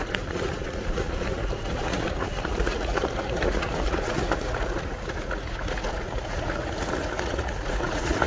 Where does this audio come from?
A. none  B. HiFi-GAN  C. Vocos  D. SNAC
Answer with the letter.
C